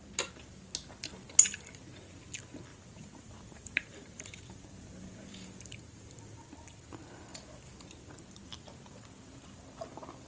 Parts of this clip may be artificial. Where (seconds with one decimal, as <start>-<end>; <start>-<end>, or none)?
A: 2.7-6.5